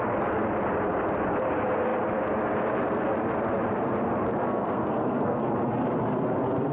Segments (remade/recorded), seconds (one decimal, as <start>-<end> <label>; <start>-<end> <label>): 0.0-4.4 recorded; 4.4-5.4 remade; 5.4-6.7 recorded